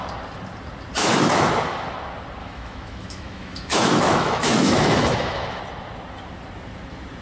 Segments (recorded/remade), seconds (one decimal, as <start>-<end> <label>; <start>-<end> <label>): 0.0-1.0 recorded; 1.0-1.5 remade; 1.5-2.4 recorded; 2.4-5.6 remade; 5.6-7.2 recorded